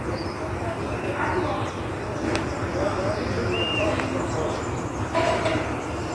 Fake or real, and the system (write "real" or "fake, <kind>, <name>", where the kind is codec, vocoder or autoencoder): real